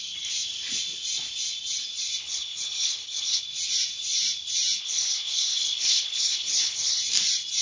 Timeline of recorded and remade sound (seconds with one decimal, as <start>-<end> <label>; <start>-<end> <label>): 0.0-2.2 recorded; 2.2-3.4 remade; 3.4-4.8 recorded; 4.8-7.0 remade; 7.0-7.6 recorded